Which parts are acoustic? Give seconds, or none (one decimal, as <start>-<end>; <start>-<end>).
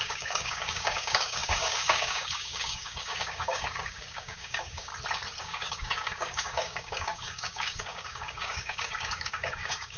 4.9-5.4